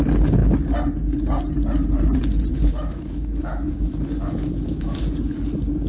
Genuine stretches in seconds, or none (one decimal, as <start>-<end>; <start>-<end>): 0.0-2.5; 5.0-5.9